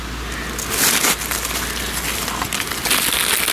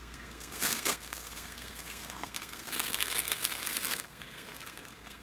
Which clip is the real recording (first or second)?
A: first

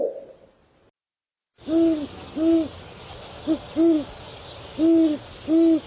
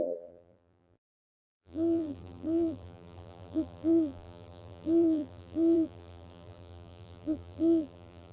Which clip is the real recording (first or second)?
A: first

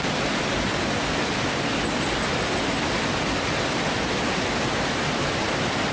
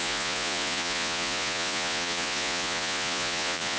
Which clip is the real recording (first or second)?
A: first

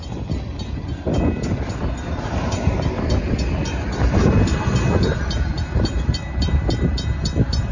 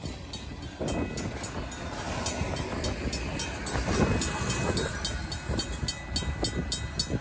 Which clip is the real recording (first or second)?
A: second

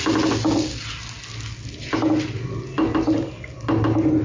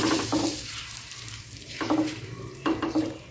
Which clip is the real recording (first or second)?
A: first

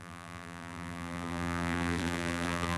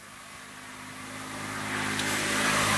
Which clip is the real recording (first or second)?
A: second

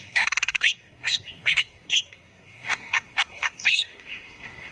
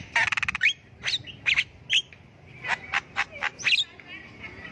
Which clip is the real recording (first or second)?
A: second